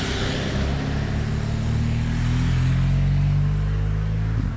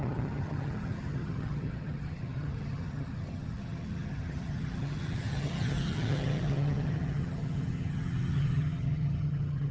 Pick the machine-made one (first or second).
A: second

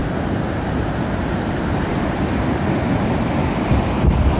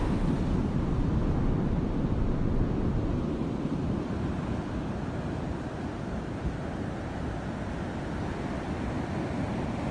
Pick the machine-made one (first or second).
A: first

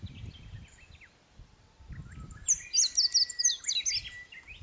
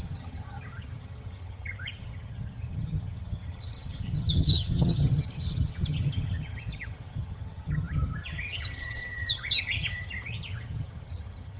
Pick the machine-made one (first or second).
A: second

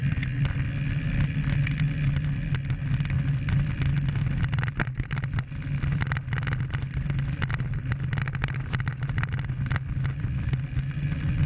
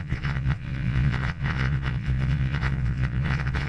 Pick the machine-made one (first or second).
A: second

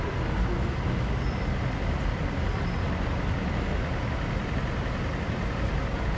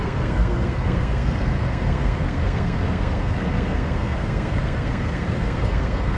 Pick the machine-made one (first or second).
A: second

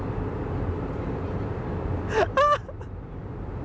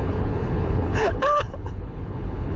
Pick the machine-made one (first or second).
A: second